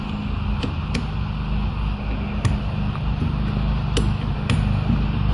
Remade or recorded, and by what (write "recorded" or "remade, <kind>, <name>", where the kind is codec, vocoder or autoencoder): recorded